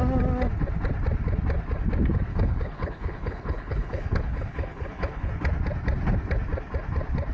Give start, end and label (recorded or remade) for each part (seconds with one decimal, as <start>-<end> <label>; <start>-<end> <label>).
0.0-2.3 recorded; 2.3-5.3 remade; 5.3-7.3 recorded